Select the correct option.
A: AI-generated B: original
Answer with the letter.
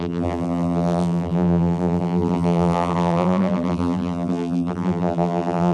A